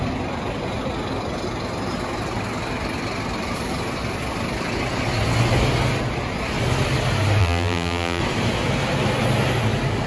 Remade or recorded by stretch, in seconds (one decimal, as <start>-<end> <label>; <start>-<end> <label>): 0.0-7.4 recorded; 7.4-8.2 remade; 8.2-10.1 recorded